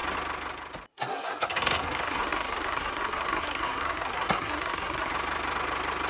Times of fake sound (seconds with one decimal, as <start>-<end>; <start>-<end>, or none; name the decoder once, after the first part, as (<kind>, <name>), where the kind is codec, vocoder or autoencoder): 0.9-5.1 (codec, SNAC)